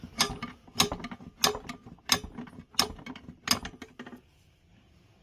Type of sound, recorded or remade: recorded